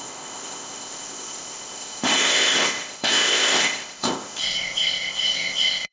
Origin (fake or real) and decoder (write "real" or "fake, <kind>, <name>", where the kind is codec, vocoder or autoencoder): fake, codec, ZipCodec